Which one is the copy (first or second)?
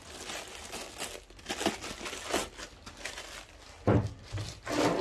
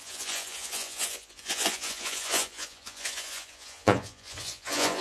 second